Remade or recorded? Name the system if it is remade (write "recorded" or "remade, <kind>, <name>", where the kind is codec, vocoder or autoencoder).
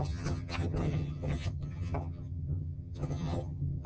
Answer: remade, vocoder, HiFi-GAN